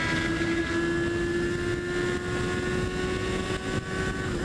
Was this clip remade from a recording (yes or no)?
no